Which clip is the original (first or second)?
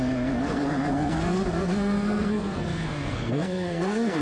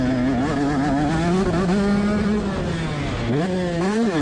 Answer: second